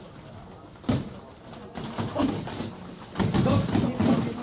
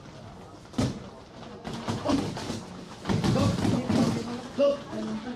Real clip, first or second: second